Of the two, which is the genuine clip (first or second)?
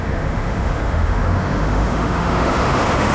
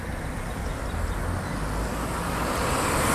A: second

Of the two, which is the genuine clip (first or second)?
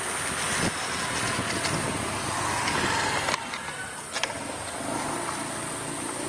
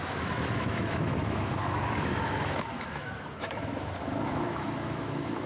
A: first